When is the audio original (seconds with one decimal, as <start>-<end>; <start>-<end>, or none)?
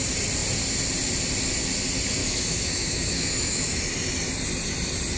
0.0-2.2; 3.8-5.2